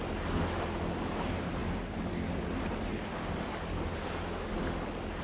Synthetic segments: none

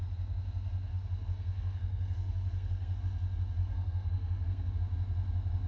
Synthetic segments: 0.9-3.0 (codec, SNAC); 3.6-4.7

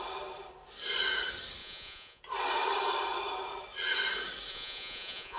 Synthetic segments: 1.6-2.2 (vocoder, Vocos); 4.5-5.4

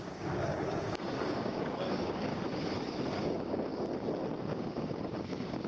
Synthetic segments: 0.0-2.3 (codec, DAC); 3.1-3.7; 4.4-5.7

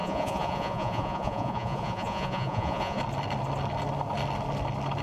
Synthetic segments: 0.0-3.0 (vocoder, Vocos)

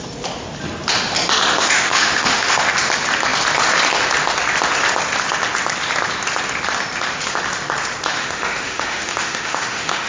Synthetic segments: 1.6-2.7 (autoencoder, DAC-VAE); 8.1-10.1

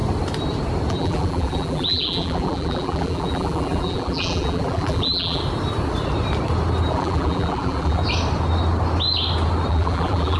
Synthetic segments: 0.9-5.4 (vocoder, BigVGAN v2); 6.9-8.0; 9.7-10.4

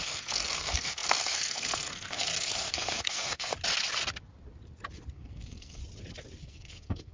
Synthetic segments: 0.0-3.5 (codec, SNAC); 5.1-5.8; 6.4-7.1